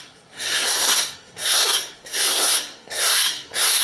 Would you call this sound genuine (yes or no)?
no